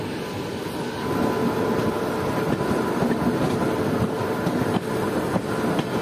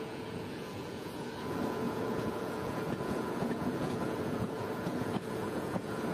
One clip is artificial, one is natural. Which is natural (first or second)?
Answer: first